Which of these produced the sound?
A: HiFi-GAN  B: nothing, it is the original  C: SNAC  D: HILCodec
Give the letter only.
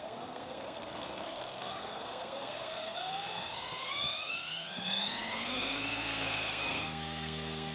C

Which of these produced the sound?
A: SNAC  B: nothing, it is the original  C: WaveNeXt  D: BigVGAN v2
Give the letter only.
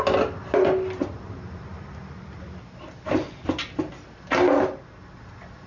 B